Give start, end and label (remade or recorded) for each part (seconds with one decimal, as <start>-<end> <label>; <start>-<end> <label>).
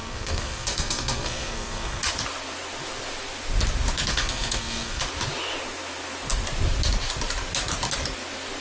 0.0-2.0 remade; 2.0-4.1 recorded; 4.1-5.0 remade; 5.0-8.6 recorded